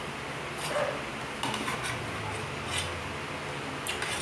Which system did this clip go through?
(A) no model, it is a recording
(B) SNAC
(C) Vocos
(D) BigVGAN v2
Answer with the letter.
A